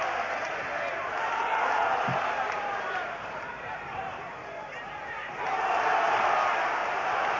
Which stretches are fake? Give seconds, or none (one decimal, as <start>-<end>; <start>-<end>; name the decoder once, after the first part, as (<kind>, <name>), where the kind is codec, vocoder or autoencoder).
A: 0.9-5.3 (vocoder, BigVGAN v2); 6.8-7.4